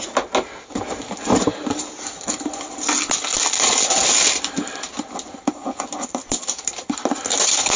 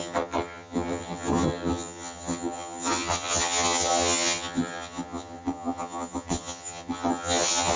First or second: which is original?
first